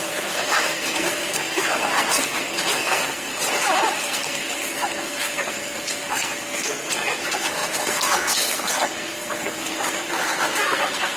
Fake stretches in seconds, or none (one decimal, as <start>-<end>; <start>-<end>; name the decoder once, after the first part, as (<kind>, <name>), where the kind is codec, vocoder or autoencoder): 0.0-3.3 (codec, SNAC); 4.0-11.2